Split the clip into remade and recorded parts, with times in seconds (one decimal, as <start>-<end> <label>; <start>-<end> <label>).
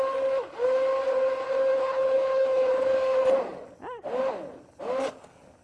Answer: 0.0-1.7 recorded; 1.7-2.7 remade; 2.7-5.6 recorded